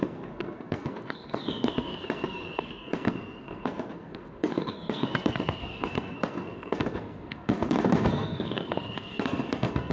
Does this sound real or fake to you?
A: fake